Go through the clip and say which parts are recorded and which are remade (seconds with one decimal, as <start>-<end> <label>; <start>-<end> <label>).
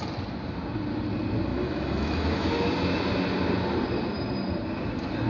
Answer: 0.0-1.5 recorded; 1.5-2.7 remade; 2.7-5.3 recorded